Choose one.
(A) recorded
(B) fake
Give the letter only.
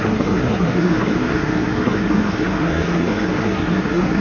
B